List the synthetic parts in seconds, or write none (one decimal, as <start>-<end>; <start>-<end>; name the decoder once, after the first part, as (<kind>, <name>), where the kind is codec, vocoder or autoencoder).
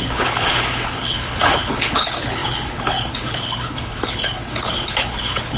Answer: 0.0-5.6 (codec, HILCodec)